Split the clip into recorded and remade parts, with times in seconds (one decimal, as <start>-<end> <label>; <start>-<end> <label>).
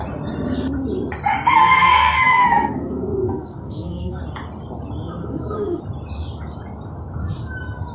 0.0-1.6 recorded; 1.6-4.2 remade; 4.2-5.2 recorded; 5.2-5.8 remade; 5.8-7.9 recorded